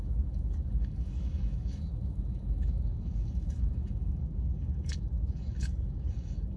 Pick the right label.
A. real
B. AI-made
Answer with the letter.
B